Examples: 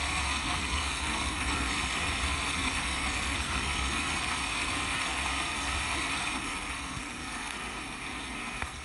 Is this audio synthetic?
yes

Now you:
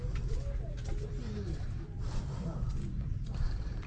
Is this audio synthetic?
no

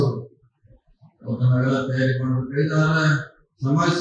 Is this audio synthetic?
no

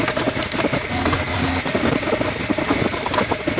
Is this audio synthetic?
no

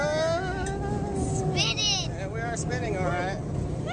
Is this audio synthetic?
no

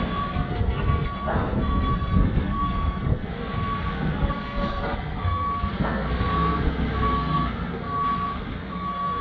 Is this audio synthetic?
yes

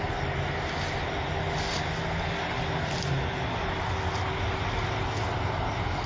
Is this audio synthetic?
no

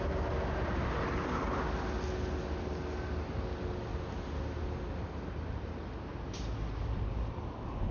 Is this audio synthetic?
no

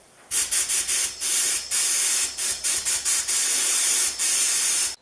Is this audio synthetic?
no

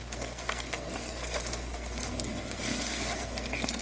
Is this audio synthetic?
yes